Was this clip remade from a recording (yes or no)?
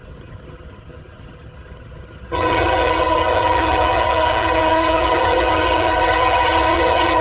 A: yes